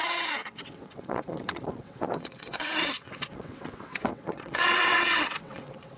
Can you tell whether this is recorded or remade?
remade